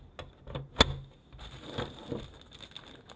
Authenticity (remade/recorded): recorded